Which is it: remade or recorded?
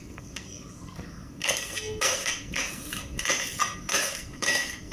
remade